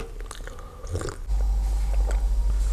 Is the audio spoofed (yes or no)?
no